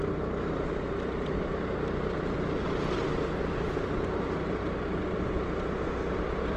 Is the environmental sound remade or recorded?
recorded